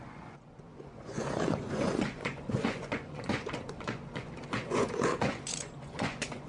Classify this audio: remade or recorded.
remade